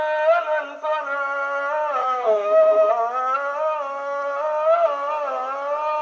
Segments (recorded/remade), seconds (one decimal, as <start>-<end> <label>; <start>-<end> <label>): 0.0-2.0 recorded; 2.0-2.9 remade; 2.9-6.0 recorded